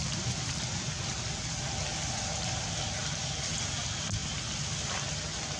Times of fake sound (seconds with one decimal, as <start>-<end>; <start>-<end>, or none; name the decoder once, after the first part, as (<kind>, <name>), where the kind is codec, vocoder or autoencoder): none